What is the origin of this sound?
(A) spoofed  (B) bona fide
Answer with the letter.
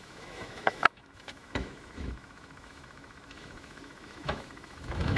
A